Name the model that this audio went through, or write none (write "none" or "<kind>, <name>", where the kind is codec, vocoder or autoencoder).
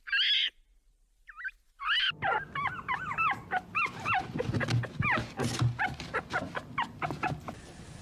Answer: none